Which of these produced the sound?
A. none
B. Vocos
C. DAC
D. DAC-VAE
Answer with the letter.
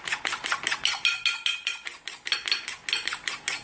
A